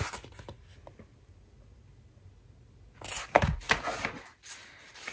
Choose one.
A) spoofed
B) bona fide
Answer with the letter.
B